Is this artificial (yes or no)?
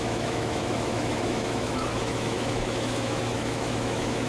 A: yes